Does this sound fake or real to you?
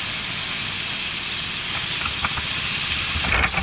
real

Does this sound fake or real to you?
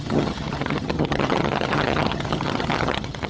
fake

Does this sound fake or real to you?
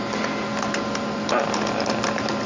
real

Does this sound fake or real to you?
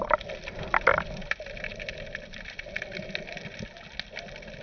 real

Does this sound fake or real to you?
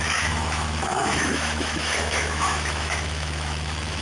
fake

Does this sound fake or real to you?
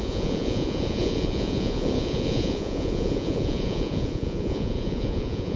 fake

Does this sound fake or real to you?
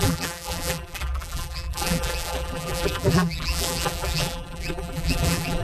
fake